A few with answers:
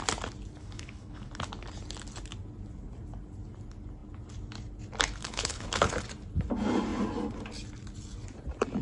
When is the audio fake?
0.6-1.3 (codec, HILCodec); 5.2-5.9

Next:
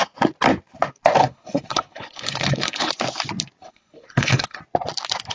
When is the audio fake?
1.2-2.9 (codec, HILCodec); 3.6-4.6

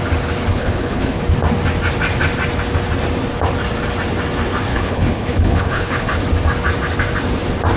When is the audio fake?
0.5-1.2 (codec, HILCodec); 4.7-6.2

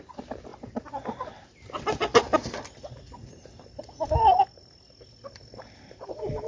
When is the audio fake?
none

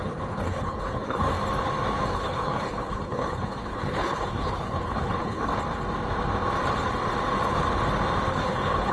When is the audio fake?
0.0-1.3 (codec, HILCodec); 2.1-5.5; 8.3-8.9

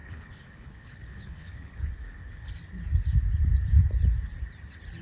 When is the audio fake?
0.0-2.5 (codec, HILCodec)

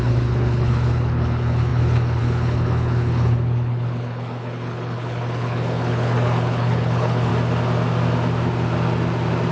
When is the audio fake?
0.0-7.3 (codec, HILCodec)

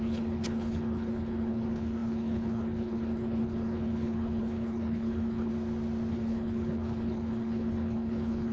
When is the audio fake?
0.0-5.5 (codec, HILCodec); 6.1-8.5